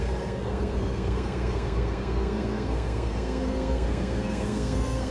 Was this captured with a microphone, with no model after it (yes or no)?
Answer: no